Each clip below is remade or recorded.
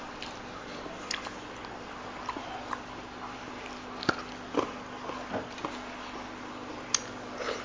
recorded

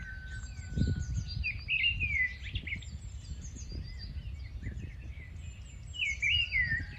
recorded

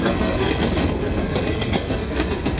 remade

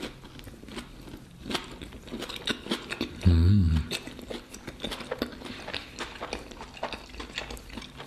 recorded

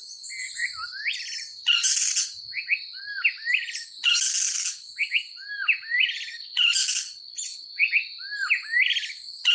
recorded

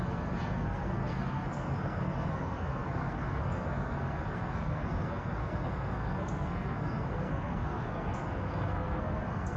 remade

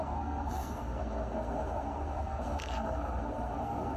remade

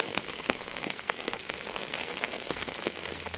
remade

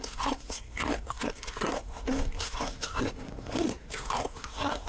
remade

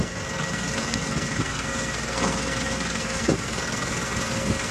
remade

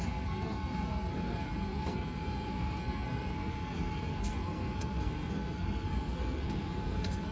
remade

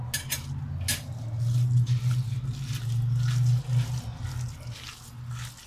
recorded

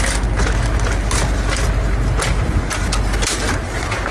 recorded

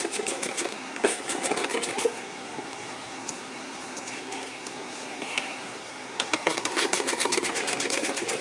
remade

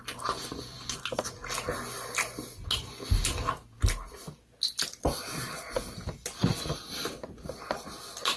recorded